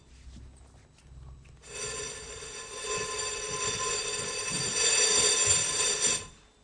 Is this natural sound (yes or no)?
yes